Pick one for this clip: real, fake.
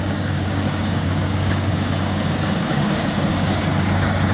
fake